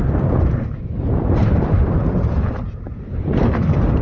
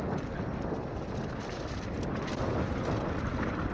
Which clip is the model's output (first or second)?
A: first